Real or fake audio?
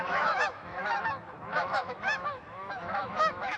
fake